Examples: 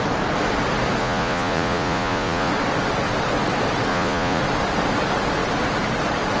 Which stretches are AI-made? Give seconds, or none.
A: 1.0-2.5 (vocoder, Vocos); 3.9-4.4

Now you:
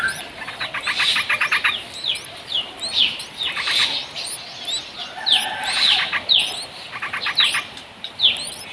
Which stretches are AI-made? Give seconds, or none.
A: none

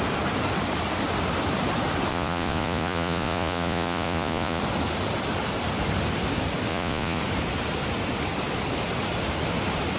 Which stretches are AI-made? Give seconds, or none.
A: 2.1-4.6 (vocoder, Vocos); 6.7-7.2

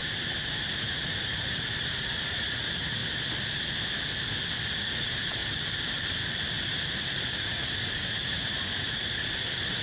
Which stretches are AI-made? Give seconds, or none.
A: 0.7-3.0 (vocoder, Vocos); 4.7-5.4; 6.9-9.8

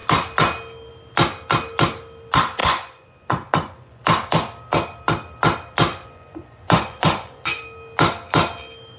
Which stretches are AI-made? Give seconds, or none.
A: 2.6-4.0 (vocoder, Vocos); 5.9-7.6

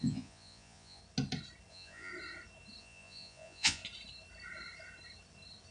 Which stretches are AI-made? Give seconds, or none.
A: 0.0-1.0 (vocoder, Vocos); 1.7-2.1; 2.8-3.8

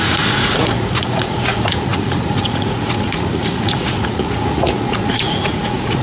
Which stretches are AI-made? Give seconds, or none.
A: 0.0-6.0 (vocoder, Vocos)

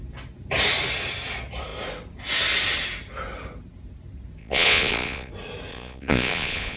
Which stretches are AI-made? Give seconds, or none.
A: 4.4-5.3 (vocoder, Vocos); 5.7-6.8